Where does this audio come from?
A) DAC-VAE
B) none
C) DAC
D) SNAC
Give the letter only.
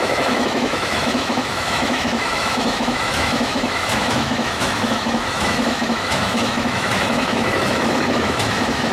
A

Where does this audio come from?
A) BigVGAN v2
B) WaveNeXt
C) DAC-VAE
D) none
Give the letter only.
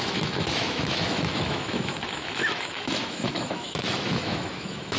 C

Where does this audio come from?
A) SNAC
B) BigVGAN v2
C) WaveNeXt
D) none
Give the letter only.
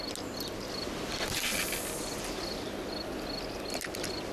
D